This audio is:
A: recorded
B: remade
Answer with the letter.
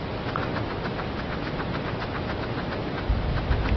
A